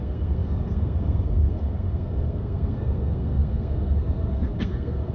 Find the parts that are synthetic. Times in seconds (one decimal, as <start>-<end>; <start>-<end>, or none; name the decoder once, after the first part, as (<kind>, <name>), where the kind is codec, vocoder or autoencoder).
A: 0.0-5.1 (codec, SNAC)

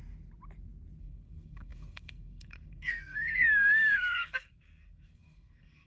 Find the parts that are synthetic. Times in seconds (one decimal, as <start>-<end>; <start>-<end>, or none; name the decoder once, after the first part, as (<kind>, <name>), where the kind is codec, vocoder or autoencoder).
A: 1.0-5.9 (codec, SNAC)

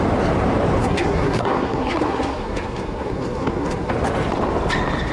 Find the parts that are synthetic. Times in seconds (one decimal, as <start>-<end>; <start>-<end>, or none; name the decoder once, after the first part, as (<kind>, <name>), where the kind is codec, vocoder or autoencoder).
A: 0.8-3.9 (codec, SNAC)

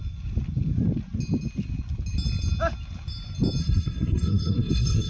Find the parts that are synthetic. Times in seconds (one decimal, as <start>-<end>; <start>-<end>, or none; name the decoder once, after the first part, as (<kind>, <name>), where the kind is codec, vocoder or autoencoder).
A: 3.6-5.1 (codec, SNAC)

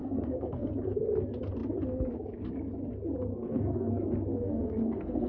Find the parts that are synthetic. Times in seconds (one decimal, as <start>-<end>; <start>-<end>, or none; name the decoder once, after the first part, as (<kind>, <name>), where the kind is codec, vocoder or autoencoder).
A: 0.0-0.7 (codec, SNAC); 3.3-3.9; 4.3-5.3

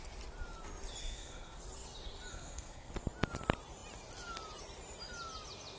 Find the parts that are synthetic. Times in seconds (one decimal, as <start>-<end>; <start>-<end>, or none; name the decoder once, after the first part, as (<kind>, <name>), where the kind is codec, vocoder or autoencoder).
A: 1.0-1.6 (codec, SNAC); 2.3-2.9

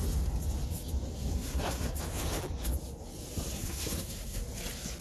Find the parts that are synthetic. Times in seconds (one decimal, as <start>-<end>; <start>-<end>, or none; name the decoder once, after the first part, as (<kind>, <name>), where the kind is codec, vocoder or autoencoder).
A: 1.1-2.0 (codec, SNAC); 3.5-4.4

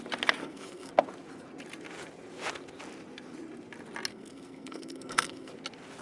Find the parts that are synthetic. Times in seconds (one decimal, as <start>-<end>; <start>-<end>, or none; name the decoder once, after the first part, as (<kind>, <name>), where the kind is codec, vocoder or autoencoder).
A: 0.4-0.9 (codec, SNAC); 4.1-5.5